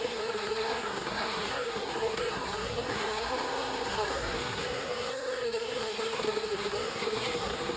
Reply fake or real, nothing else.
fake